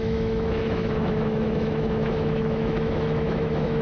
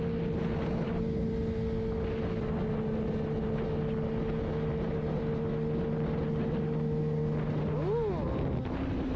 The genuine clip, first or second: second